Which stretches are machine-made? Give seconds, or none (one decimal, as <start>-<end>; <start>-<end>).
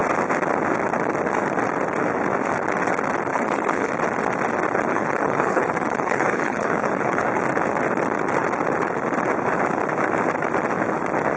3.3-3.9; 4.9-7.4